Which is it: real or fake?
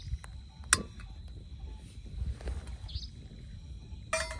real